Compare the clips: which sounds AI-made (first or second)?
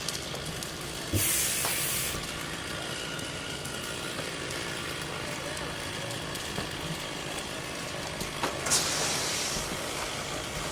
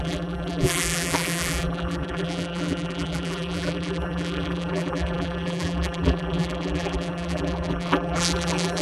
second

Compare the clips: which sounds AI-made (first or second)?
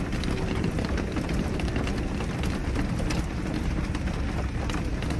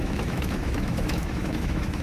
second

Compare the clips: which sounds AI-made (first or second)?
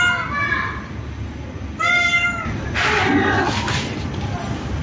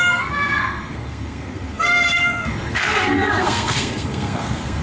second